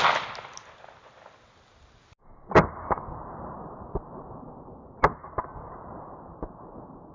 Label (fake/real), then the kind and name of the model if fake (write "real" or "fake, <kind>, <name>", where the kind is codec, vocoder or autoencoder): real